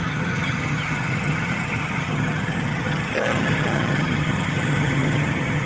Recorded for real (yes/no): no